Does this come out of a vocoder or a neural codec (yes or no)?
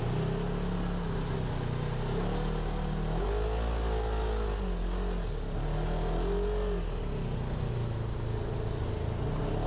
no